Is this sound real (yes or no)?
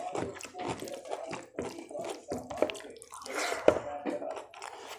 yes